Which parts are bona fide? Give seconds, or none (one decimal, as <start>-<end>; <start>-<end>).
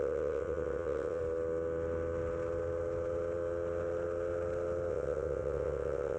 1.2-4.9